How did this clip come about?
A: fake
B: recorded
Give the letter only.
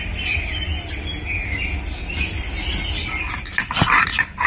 B